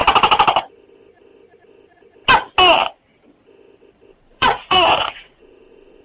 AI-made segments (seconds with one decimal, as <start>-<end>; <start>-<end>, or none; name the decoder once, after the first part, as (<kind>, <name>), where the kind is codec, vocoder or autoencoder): 4.1-6.0 (vocoder, Vocos)